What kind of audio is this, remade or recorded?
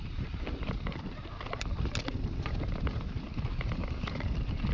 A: recorded